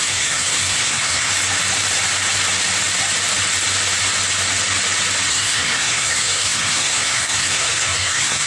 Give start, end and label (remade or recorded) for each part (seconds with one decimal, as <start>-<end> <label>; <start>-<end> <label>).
0.0-1.3 remade; 1.3-5.3 recorded; 5.3-8.5 remade